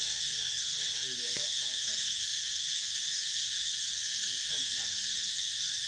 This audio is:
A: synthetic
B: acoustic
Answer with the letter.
A